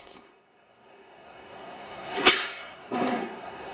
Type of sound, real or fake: fake